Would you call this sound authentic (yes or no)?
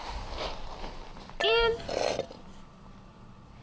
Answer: yes